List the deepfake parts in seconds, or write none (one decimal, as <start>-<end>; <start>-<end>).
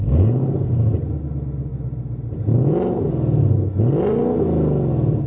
none